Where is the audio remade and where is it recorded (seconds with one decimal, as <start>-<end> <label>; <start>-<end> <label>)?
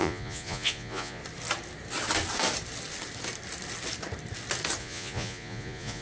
0.0-1.2 remade; 1.2-4.8 recorded; 4.8-6.0 remade